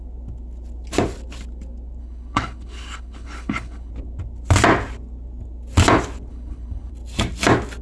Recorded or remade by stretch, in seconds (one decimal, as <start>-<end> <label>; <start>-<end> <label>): 0.0-2.0 recorded; 2.0-3.9 remade; 3.9-6.3 recorded; 6.3-6.9 remade; 6.9-7.8 recorded